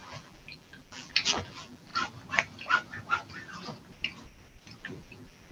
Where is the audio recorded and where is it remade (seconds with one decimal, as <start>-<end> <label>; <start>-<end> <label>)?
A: 0.0-1.9 remade; 1.9-4.8 recorded; 4.8-5.5 remade